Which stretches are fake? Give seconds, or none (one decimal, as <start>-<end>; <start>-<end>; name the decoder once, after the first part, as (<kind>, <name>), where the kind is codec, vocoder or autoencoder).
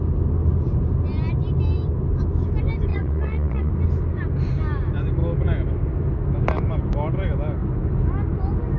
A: 2.9-3.7 (vocoder, Vocos)